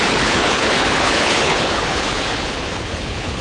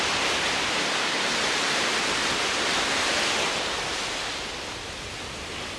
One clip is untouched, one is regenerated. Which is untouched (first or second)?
second